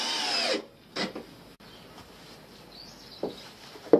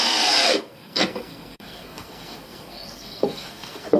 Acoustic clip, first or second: first